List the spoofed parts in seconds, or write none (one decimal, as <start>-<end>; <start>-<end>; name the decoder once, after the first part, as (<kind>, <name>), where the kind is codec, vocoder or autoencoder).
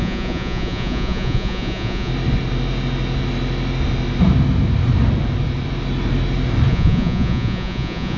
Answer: 0.0-2.1 (vocoder, Vocos); 6.7-8.2